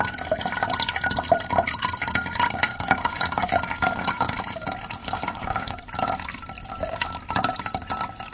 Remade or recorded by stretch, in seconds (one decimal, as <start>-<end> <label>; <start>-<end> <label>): 0.0-2.7 recorded; 2.7-4.3 remade; 4.3-5.0 recorded; 5.0-5.8 remade; 5.8-8.3 recorded